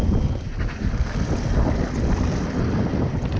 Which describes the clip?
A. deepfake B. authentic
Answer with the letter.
A